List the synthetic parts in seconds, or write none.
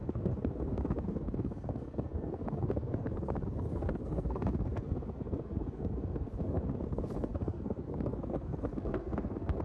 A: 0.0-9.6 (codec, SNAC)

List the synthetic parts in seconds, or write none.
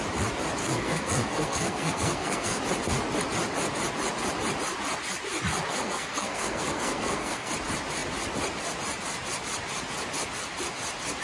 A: 0.6-2.6 (codec, SNAC); 5.7-7.5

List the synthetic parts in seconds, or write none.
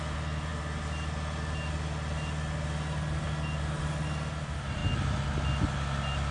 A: none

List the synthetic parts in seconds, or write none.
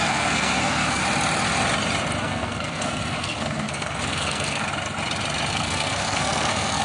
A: 0.0-1.0 (codec, SNAC); 2.2-4.7; 5.5-6.8